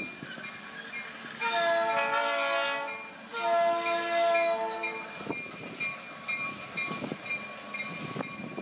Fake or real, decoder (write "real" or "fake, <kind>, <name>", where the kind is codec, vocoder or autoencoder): real